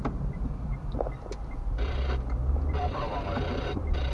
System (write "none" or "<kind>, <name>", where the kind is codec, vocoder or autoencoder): vocoder, BigVGAN v2